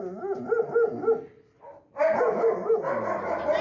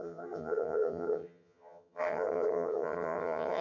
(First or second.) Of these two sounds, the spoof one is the second